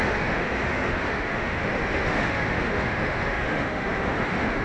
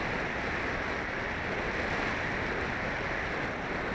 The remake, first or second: first